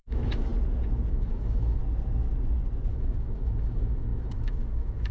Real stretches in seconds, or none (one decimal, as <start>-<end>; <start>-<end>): 0.5-1.1; 1.8-2.9